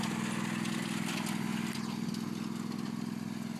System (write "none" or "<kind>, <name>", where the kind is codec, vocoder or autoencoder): none